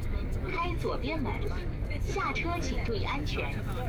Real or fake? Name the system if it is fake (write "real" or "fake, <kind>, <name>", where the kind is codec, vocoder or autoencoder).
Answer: fake, codec, DAC